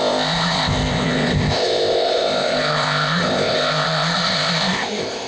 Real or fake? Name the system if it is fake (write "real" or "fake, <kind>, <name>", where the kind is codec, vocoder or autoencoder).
fake, codec, ZipCodec